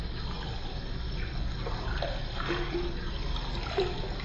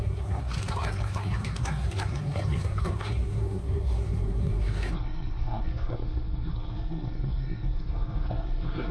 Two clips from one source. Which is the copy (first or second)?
second